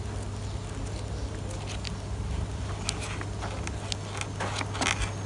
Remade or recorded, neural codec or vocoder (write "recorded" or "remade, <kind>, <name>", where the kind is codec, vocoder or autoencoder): recorded